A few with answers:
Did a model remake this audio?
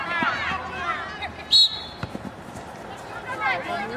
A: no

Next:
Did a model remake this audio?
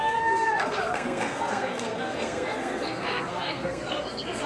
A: yes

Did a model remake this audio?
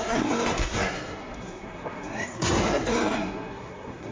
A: yes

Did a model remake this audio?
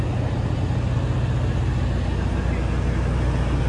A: no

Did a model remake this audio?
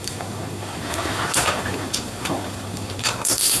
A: yes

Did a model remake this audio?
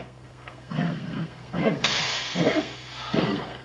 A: yes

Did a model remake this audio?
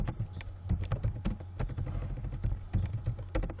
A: no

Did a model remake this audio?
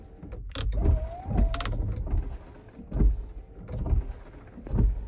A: no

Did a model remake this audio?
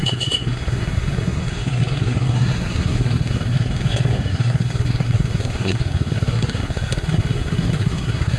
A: yes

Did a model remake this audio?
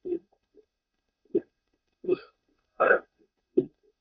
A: yes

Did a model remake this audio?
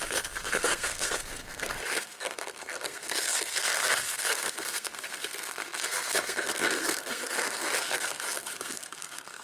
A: yes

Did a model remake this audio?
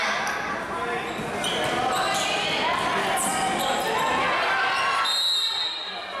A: no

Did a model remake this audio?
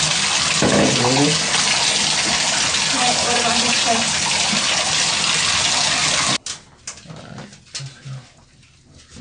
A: no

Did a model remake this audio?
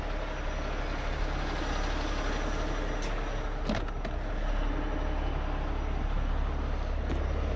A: no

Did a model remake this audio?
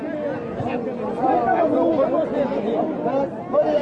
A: no